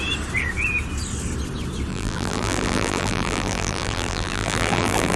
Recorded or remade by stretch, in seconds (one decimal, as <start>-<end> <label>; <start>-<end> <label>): 0.0-1.9 recorded; 1.9-5.2 remade